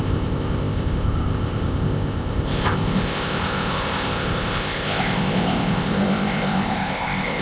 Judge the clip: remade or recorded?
remade